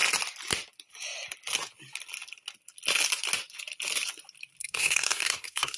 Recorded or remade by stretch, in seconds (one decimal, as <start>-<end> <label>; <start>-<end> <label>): 0.0-4.6 recorded; 4.6-5.8 remade